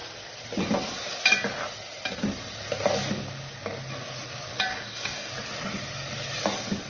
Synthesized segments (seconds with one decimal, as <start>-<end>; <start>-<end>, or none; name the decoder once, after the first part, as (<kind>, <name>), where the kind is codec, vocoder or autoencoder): 4.7-5.3 (codec, DAC)